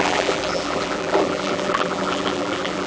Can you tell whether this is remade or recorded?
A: remade